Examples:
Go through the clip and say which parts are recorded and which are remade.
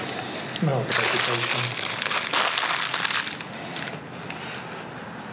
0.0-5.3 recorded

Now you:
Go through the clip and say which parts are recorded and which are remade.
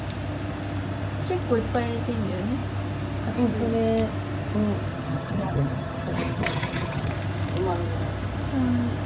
0.0-4.9 recorded; 4.9-7.1 remade; 7.1-9.1 recorded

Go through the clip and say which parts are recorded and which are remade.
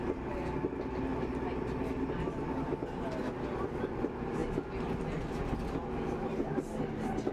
0.0-7.3 recorded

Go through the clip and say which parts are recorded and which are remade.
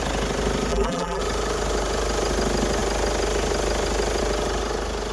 0.0-0.7 recorded; 0.7-1.2 remade; 1.2-5.1 recorded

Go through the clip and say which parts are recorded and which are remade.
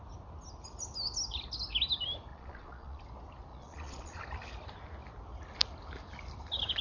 0.0-2.3 recorded; 2.3-3.0 remade; 3.0-3.5 recorded; 3.5-4.2 remade; 4.2-6.8 recorded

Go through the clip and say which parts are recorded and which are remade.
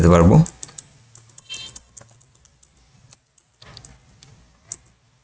0.0-5.2 recorded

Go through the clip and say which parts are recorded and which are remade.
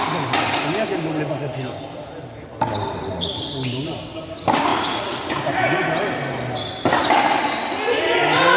0.0-4.7 recorded; 4.7-5.3 remade; 5.3-8.6 recorded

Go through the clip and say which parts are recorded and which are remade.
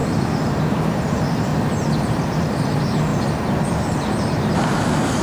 0.0-0.7 recorded; 0.7-1.5 remade; 1.5-2.0 recorded; 2.0-3.1 remade; 3.1-3.6 recorded; 3.6-5.2 remade